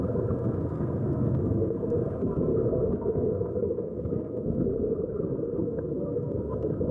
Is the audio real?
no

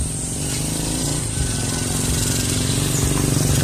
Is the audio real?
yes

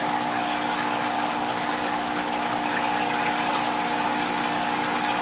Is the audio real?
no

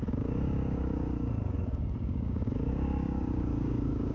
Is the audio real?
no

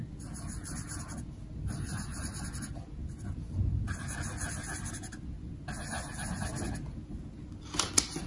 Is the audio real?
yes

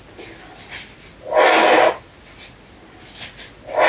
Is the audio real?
yes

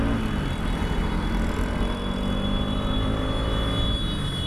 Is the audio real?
yes